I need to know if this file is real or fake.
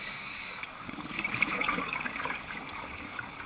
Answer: fake